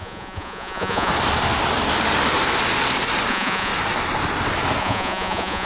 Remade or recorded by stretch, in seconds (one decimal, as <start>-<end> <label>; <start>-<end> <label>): 0.0-1.1 remade; 1.1-3.3 recorded; 3.3-3.7 remade; 3.7-4.8 recorded; 4.8-5.7 remade